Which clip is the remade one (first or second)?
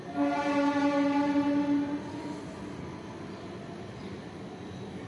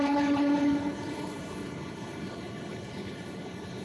second